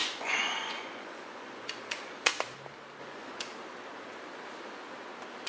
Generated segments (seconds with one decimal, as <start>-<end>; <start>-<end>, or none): 0.0-2.3; 3.0-3.5

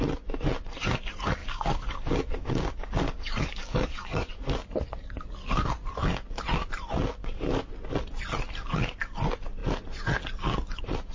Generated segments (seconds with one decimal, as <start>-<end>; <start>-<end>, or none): 1.4-4.3; 7.2-7.7

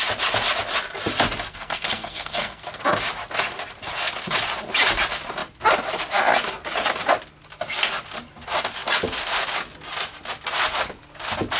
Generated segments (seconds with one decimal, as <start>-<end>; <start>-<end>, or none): 1.5-2.8

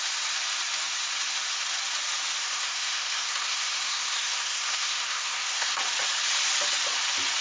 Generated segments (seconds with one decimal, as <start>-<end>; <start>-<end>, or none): 2.4-5.8

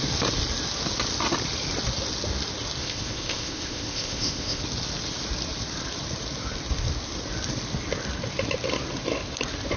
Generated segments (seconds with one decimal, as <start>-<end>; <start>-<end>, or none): 2.8-4.6

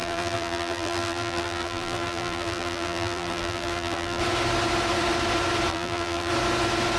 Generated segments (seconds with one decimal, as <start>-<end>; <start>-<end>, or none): 0.0-4.2; 5.7-6.3